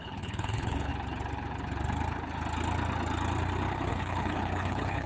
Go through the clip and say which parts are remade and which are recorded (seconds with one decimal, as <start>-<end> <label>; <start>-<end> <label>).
0.0-0.9 remade; 0.9-3.9 recorded; 3.9-5.1 remade